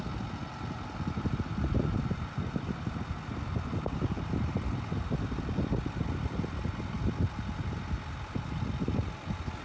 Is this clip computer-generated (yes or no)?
no